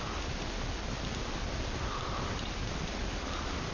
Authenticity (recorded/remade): remade